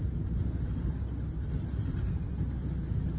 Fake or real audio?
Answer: real